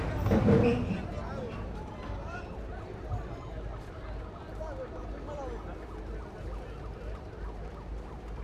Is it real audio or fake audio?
real